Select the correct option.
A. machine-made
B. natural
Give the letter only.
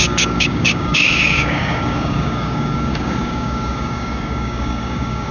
A